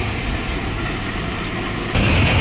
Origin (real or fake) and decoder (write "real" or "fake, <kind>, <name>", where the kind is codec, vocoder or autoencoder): real